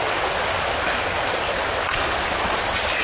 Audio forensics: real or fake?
real